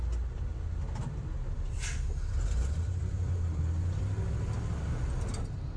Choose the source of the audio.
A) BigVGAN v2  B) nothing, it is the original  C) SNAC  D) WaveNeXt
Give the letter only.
B